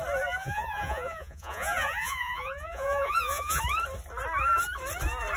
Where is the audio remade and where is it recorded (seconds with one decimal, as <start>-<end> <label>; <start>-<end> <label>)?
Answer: 0.0-0.4 recorded; 0.4-3.6 remade; 3.6-5.4 recorded